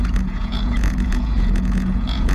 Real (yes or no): no